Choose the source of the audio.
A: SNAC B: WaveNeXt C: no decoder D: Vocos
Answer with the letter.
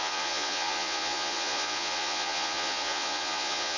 D